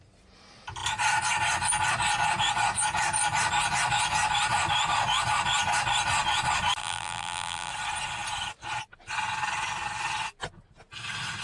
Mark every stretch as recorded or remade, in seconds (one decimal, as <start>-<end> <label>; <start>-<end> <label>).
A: 0.0-6.8 recorded; 6.8-7.7 remade; 7.7-11.4 recorded